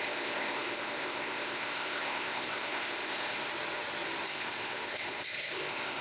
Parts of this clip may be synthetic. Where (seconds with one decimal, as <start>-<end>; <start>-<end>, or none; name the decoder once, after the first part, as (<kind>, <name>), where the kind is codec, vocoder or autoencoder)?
0.0-3.5 (codec, ZipCodec); 4.3-6.0